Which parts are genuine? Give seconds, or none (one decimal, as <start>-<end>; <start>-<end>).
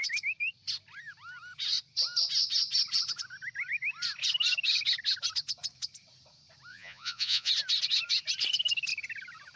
0.0-6.7; 7.5-9.6